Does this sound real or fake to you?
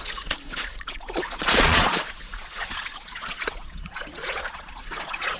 fake